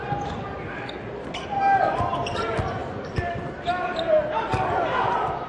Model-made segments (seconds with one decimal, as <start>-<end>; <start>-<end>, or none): none